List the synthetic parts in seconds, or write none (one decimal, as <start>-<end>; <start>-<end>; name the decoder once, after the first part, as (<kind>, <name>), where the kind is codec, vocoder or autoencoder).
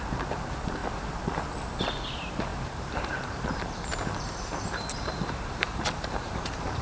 0.0-0.8 (vocoder, BigVGAN v2); 1.8-6.8